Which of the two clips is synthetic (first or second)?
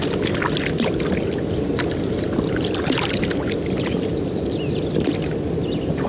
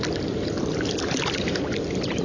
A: first